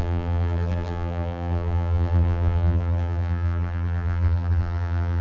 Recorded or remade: remade